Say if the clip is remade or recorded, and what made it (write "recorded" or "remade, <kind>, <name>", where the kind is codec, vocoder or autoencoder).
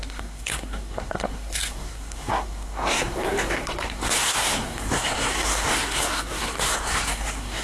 remade, codec, SNAC